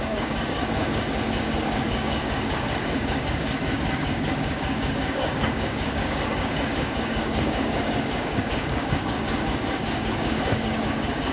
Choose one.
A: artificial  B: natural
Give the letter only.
A